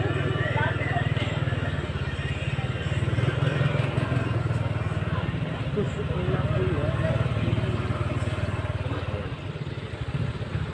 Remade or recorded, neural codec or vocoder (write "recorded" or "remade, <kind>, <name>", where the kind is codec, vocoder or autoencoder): recorded